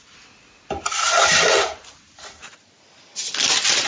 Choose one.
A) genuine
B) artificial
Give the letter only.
A